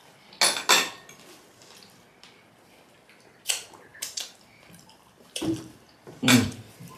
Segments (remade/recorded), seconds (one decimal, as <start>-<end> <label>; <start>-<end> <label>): 0.0-3.9 recorded; 3.9-7.0 remade